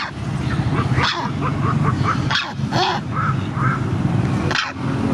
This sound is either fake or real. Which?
real